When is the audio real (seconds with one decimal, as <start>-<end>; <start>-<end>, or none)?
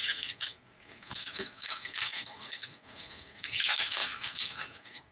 none